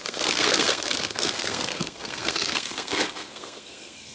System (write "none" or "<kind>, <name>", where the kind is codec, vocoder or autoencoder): codec, SNAC